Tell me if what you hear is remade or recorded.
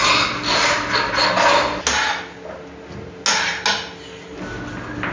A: recorded